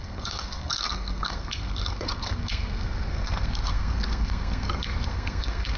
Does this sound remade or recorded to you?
remade